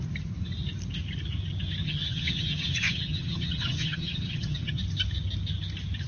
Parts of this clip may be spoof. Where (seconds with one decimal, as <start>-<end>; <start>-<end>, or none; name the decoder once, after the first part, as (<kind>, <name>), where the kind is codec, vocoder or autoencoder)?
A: 1.8-4.8 (vocoder, HiFi-GAN)